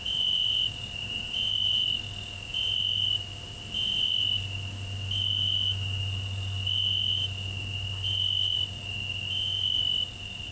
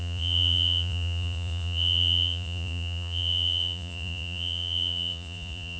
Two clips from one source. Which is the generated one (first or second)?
second